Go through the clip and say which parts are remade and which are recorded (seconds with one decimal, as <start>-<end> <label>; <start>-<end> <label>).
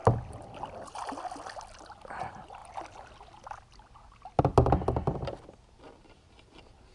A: 0.0-6.9 recorded